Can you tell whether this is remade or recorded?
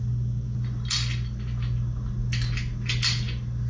recorded